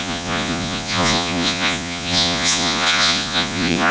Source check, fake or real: fake